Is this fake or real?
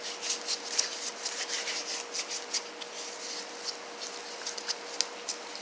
real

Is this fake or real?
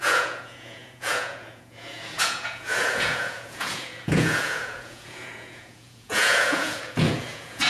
fake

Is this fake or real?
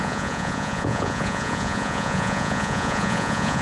fake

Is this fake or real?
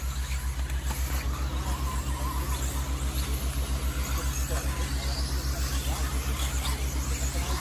real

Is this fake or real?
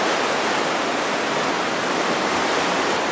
real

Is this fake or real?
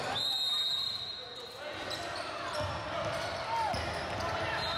real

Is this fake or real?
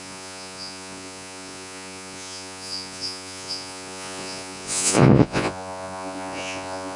fake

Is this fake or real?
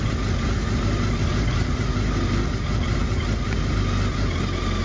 real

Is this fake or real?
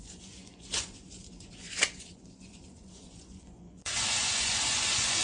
fake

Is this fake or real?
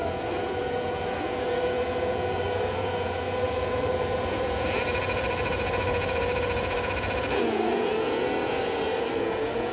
fake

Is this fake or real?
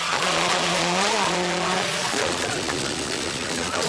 fake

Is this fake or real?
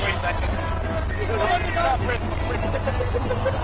real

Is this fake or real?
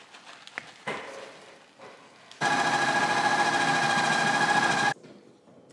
real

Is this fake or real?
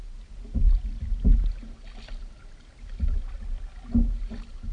real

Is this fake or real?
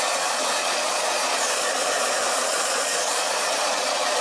fake